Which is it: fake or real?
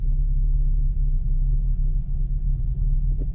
fake